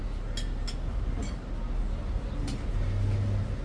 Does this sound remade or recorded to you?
recorded